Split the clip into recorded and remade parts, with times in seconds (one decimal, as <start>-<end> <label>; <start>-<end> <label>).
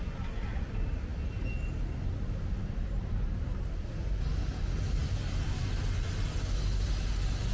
0.0-7.5 recorded